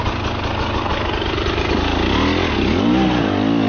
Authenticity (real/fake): real